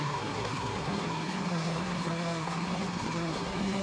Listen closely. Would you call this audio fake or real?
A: fake